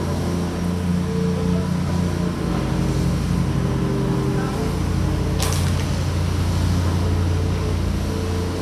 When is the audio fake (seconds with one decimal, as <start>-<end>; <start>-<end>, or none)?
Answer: none